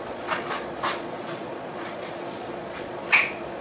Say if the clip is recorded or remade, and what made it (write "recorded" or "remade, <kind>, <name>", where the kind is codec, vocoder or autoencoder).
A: remade, vocoder, Vocos